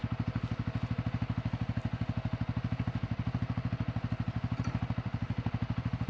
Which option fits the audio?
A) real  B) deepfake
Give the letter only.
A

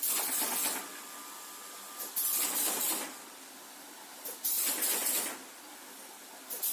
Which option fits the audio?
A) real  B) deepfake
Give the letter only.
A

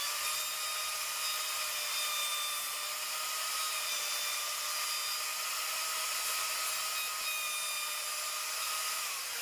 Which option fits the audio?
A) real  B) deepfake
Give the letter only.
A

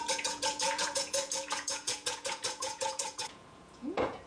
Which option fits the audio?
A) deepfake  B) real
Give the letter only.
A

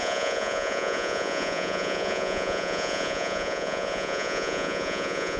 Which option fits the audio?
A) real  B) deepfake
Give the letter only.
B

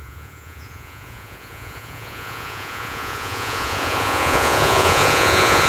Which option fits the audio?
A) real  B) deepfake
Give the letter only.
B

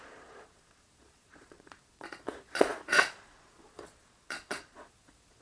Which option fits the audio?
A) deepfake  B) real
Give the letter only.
A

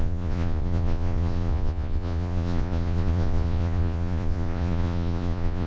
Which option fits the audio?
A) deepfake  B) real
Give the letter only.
A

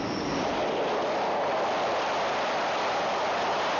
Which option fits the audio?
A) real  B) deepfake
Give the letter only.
A